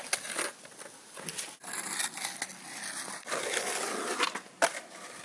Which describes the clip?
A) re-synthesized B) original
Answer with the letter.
B